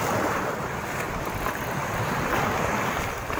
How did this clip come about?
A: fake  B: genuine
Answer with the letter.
B